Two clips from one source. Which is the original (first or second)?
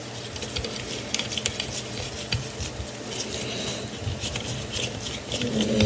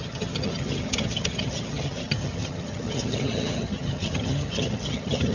first